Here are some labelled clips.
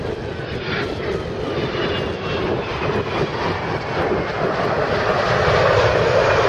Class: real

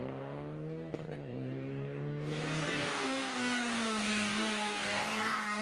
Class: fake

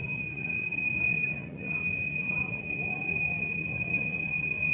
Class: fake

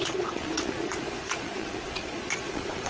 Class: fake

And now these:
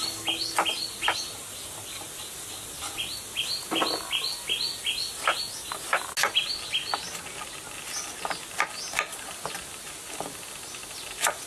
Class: real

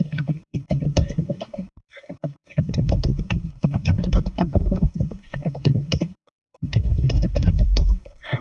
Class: fake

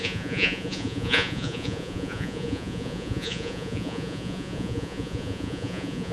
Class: fake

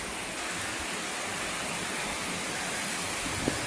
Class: real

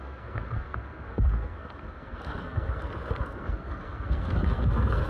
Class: fake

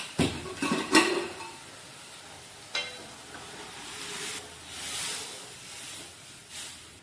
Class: real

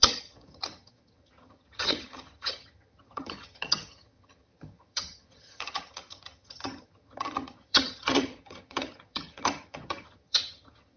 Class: fake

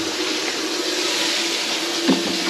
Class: real